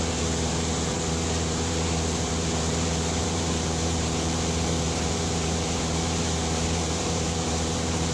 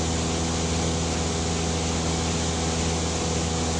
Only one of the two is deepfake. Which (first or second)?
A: first